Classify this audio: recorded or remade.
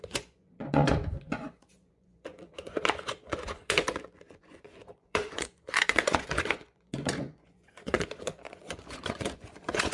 remade